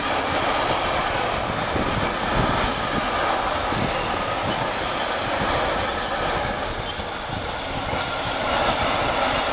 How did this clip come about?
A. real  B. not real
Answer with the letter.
A